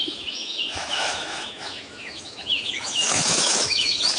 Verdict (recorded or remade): remade